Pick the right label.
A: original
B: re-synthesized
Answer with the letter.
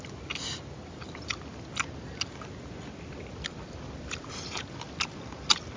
A